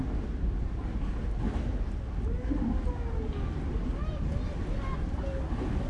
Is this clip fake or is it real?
real